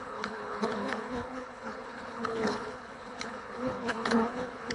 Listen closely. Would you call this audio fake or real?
fake